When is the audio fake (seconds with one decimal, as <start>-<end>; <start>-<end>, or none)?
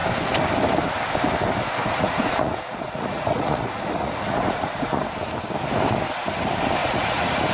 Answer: 1.8-5.0; 6.8-7.5